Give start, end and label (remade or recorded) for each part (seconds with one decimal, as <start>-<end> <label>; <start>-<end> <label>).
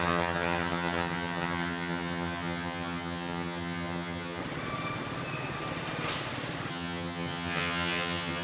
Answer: 0.0-4.4 remade; 4.4-6.7 recorded; 6.7-8.4 remade